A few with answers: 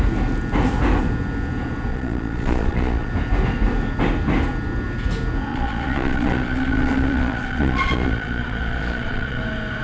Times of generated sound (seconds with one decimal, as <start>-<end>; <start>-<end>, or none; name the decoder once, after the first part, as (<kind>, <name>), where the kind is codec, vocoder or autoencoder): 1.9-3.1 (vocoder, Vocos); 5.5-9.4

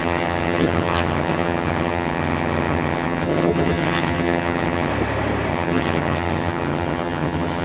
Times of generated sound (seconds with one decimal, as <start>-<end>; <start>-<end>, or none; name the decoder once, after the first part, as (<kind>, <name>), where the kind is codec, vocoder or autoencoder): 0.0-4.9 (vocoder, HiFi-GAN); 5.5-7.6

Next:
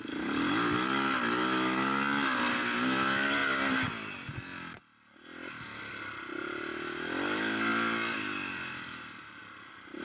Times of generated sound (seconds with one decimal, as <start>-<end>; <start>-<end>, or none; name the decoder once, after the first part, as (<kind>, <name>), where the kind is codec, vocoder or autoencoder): none

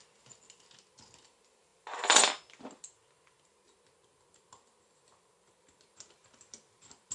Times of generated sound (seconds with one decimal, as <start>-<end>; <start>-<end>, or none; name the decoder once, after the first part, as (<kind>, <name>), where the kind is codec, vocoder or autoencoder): none

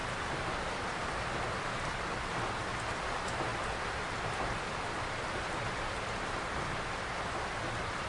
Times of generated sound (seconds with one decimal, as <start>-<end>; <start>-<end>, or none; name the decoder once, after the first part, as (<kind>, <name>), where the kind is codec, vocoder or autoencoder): 0.0-1.7 (vocoder, BigVGAN v2); 3.5-6.4

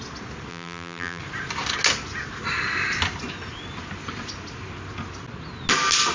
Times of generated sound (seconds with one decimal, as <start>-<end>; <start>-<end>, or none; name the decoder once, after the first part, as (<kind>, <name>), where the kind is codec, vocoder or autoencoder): 0.5-1.2 (vocoder, BigVGAN v2)